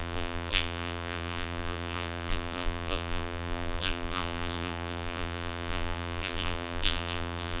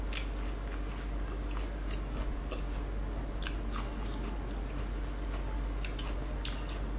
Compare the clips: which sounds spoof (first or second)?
first